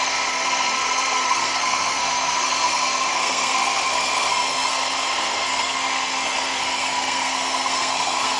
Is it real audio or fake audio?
fake